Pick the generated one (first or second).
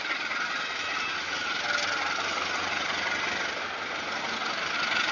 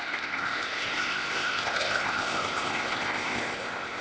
second